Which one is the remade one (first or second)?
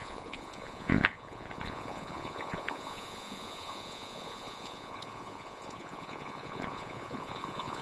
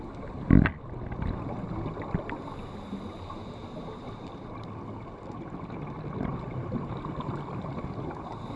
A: first